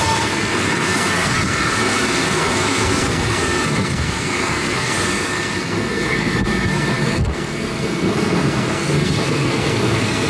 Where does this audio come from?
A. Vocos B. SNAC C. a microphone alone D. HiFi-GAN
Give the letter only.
B